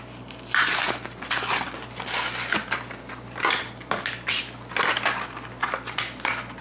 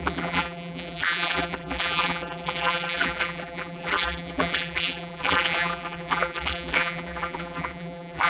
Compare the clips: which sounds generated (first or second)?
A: second